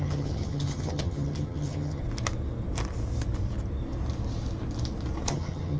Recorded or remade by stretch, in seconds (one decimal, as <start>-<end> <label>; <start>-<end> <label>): 0.0-2.0 remade; 2.0-5.3 recorded; 5.3-5.8 remade